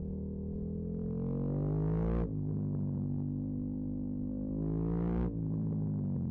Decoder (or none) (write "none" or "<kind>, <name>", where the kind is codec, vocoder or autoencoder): none